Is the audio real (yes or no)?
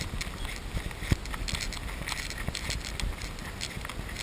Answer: yes